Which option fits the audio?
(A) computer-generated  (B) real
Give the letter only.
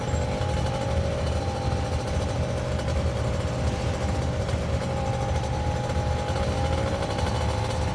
B